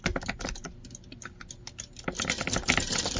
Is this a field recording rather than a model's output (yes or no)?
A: yes